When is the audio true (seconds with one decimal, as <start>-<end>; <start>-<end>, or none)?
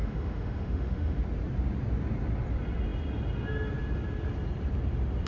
1.2-5.3